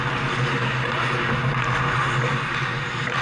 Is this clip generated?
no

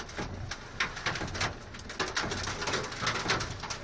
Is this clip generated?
no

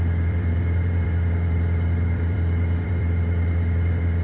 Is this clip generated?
yes